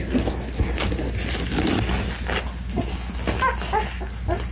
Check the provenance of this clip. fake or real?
real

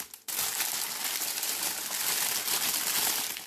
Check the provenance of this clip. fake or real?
real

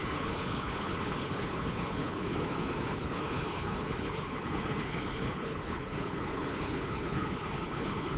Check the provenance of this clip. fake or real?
fake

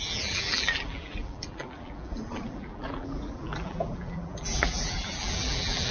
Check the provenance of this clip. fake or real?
fake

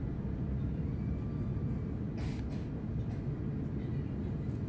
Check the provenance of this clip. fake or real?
real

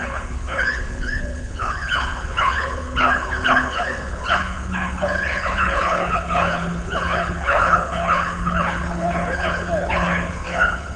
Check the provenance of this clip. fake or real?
fake